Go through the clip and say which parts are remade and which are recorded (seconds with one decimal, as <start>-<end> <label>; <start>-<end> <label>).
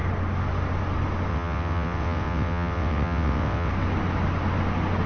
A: 0.0-1.3 recorded; 1.3-3.7 remade; 3.7-5.1 recorded